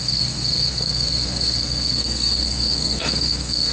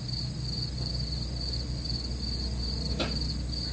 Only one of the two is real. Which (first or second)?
second